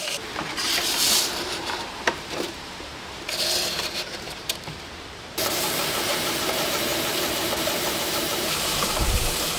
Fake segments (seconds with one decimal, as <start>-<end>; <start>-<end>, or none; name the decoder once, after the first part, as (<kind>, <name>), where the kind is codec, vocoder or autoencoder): 0.0-2.9 (vocoder, BigVGAN v2); 3.6-6.9; 8.1-9.6